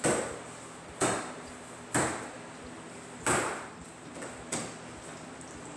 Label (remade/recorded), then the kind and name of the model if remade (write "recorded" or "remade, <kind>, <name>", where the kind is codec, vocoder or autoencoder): recorded